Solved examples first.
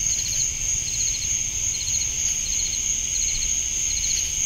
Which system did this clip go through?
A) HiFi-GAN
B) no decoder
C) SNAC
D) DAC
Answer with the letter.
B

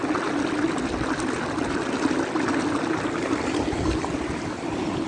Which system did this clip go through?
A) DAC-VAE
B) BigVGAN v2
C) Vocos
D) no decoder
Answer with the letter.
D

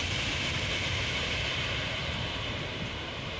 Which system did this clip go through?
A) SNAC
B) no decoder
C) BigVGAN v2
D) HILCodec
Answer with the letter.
C